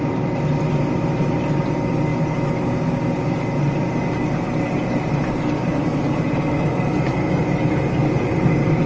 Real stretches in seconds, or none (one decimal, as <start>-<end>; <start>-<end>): 0.0-8.9